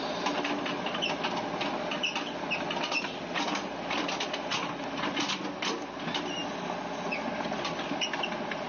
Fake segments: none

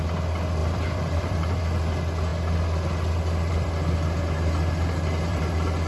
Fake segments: 0.6-1.6 (vocoder, BigVGAN v2); 5.3-5.9

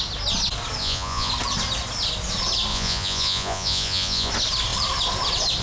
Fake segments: 0.8-1.3 (vocoder, Vocos); 2.7-4.3

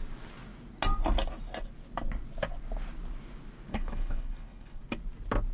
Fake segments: 3.7-4.8 (codec, HILCodec)

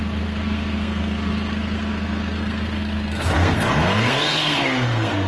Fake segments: 0.0-5.3 (codec, SNAC)

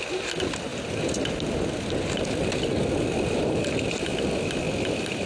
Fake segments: none

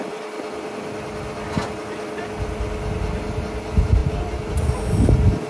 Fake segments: none

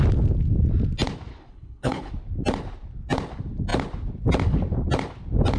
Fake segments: 1.3-2.1 (codec, HILCodec)